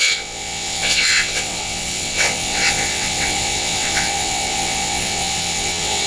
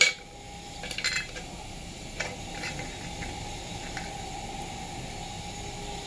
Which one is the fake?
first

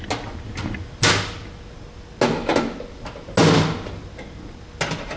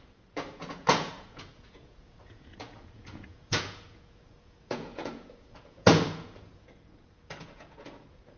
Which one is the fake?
second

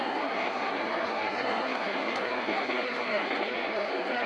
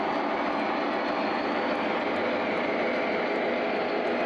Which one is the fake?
first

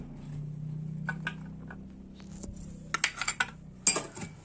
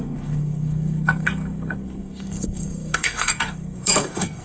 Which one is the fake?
second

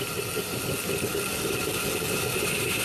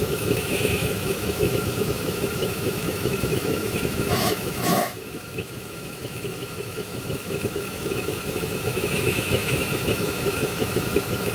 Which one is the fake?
second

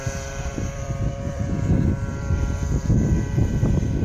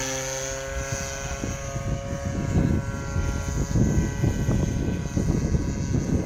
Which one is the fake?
first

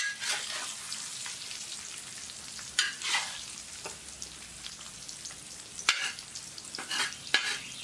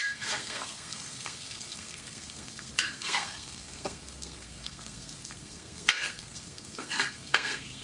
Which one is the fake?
second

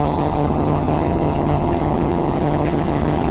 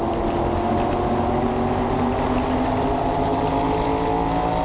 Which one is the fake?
first